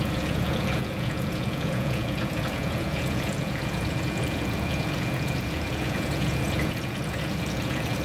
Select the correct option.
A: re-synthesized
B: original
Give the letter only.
A